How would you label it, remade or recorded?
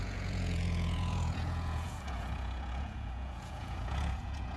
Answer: remade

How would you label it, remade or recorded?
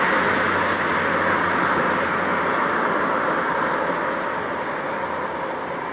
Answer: recorded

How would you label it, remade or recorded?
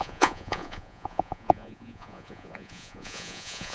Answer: remade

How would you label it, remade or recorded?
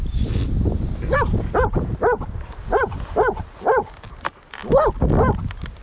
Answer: recorded